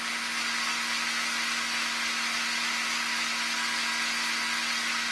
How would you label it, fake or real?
real